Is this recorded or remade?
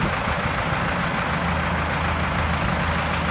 recorded